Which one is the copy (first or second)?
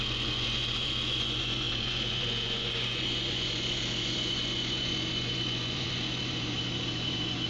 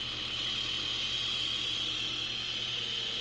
first